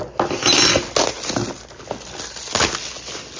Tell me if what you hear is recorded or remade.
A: recorded